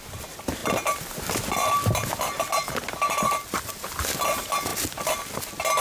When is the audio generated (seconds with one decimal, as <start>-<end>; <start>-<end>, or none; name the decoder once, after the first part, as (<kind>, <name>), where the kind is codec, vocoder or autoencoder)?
4.7-5.2 (vocoder, BigVGAN v2)